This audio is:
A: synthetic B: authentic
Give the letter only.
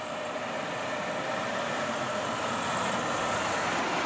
B